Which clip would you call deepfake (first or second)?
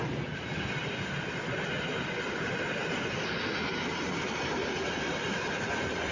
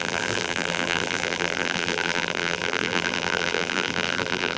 second